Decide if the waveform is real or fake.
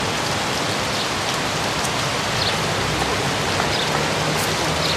real